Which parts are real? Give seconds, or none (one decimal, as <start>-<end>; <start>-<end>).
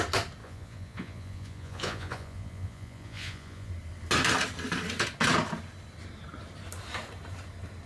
0.0-0.4; 3.7-7.9